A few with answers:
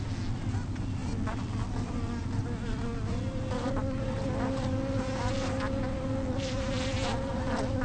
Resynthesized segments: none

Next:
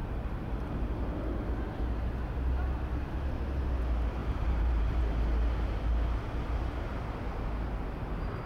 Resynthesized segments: 0.0-0.9 (vocoder, BigVGAN v2); 4.2-5.0

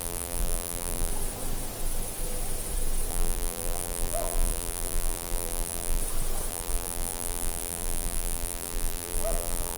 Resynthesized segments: 0.0-1.1 (vocoder, BigVGAN v2); 3.1-6.0; 6.5-9.8